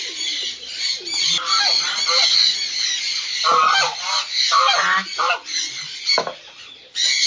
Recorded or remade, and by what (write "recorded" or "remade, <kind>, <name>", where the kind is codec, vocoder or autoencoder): recorded